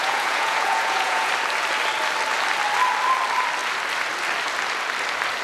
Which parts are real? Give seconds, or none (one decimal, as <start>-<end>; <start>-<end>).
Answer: 1.3-5.4